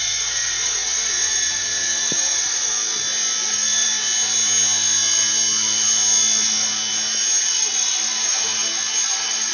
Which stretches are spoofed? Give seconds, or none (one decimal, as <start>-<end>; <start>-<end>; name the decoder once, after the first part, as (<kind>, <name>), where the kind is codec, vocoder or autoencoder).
0.0-2.7 (vocoder, Vocos); 3.5-3.9; 7.4-8.5